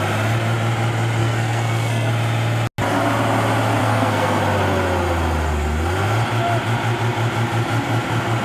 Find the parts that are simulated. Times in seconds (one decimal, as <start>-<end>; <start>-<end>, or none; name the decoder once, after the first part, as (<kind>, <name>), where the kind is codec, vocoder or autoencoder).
1.2-2.1 (codec, SNAC); 3.8-4.4